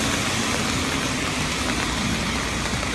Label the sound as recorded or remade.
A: recorded